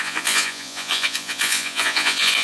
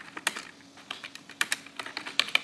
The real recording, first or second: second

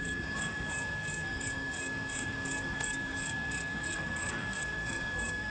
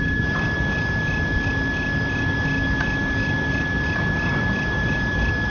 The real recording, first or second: second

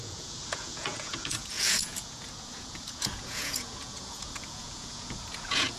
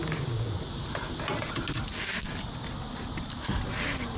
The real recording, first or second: second